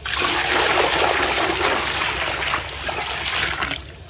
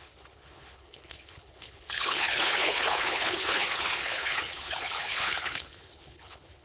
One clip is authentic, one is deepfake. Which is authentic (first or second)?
first